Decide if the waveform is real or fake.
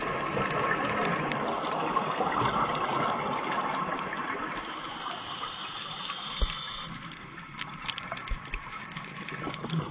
real